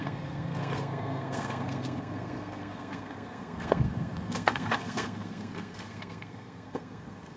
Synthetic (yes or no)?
yes